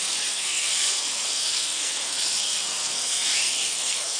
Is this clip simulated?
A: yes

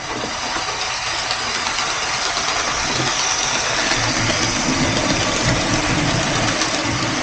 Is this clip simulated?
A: no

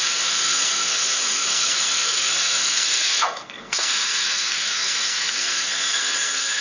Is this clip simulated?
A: yes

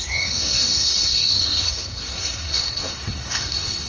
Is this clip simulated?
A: yes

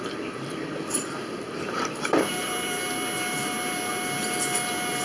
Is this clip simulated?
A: no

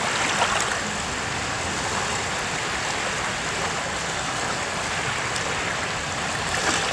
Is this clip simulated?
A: no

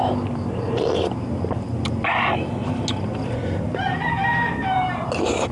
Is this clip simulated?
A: no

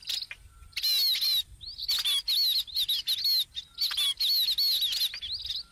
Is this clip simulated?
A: no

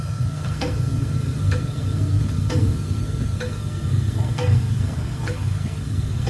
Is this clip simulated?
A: yes